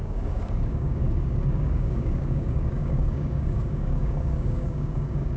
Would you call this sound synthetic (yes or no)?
yes